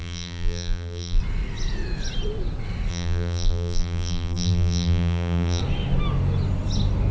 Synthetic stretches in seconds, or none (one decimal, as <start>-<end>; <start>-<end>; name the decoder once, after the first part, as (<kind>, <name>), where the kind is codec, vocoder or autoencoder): 0.0-1.2 (vocoder, BigVGAN v2); 2.9-5.6